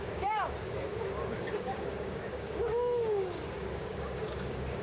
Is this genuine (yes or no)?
no